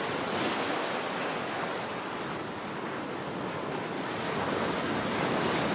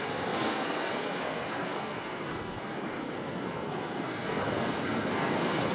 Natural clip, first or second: first